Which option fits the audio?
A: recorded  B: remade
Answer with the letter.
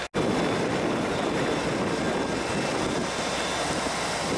A